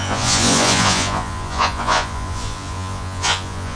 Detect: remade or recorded remade